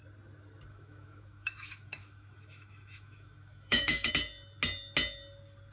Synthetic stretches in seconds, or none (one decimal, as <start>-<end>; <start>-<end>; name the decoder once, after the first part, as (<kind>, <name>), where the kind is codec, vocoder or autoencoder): 0.7-4.1 (autoencoder, DAC-VAE)